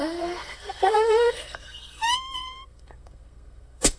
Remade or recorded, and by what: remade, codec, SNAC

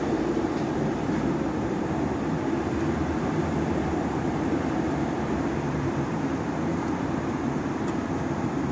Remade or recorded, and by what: remade, vocoder, BigVGAN v2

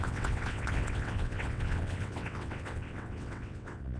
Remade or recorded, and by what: remade, vocoder, WaveNeXt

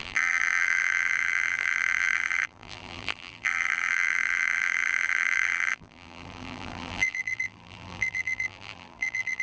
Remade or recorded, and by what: remade, vocoder, BigVGAN v2